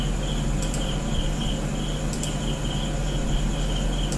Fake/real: real